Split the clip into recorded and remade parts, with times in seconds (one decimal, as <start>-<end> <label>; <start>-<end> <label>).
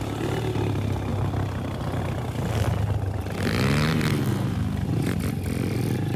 0.0-4.3 recorded; 4.3-5.2 remade; 5.2-6.2 recorded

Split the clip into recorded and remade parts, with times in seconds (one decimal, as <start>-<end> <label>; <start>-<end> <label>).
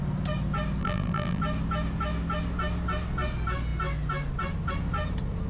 0.0-0.8 recorded; 0.8-1.4 remade; 1.4-5.5 recorded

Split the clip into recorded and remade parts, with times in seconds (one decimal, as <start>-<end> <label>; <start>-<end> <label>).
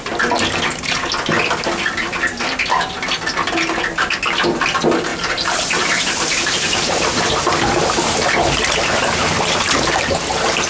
0.0-5.1 recorded; 5.1-7.3 remade; 7.3-10.7 recorded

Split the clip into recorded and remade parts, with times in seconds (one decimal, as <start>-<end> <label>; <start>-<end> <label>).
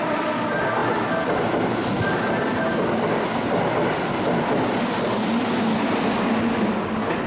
0.0-7.3 recorded